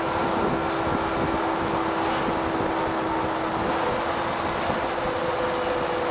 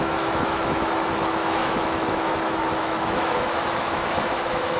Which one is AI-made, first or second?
second